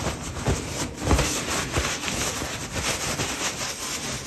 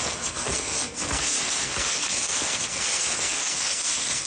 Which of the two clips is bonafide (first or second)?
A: first